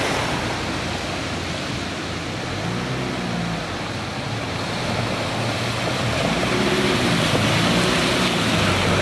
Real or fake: real